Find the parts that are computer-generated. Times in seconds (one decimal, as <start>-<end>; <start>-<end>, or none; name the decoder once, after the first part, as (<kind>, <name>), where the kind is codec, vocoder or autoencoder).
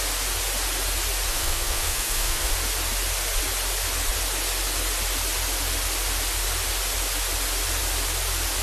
1.3-2.5 (codec, SNAC)